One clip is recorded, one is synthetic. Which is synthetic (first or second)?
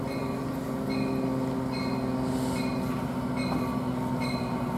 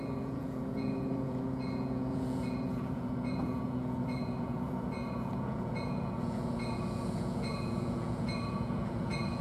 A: second